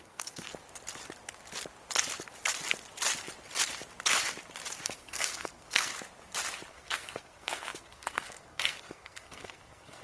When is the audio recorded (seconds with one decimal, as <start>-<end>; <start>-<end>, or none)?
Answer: 0.5-4.8; 5.9-6.7